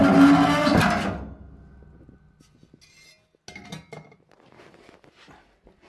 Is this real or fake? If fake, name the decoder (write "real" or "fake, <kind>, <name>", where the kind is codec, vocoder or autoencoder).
real